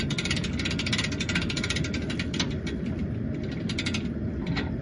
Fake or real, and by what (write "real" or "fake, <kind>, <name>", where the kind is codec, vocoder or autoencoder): real